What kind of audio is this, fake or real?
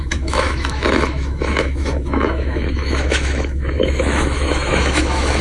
fake